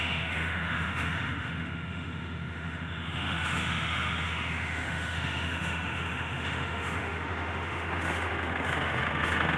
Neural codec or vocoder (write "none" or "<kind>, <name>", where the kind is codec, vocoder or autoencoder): autoencoder, DAC-VAE